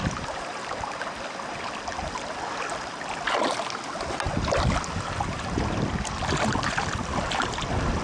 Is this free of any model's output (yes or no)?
yes